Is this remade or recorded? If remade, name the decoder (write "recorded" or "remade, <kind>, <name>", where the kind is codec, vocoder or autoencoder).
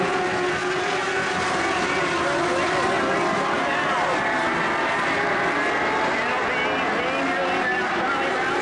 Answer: recorded